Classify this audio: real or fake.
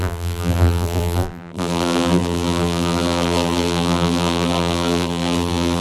fake